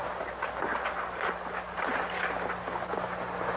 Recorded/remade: recorded